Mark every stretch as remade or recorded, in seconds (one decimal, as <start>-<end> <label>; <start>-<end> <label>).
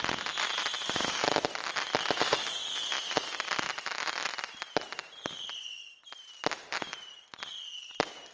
0.0-8.3 recorded